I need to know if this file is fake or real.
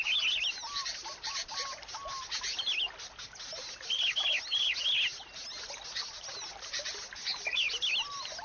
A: real